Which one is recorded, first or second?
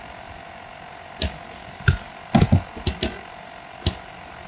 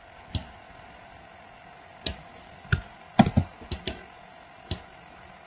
first